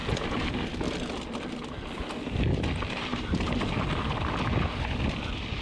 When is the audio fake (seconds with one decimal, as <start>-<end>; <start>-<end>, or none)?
none